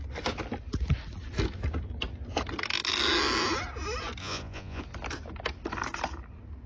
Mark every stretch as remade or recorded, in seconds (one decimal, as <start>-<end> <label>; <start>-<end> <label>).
0.0-4.2 recorded; 4.2-4.8 remade; 4.8-6.7 recorded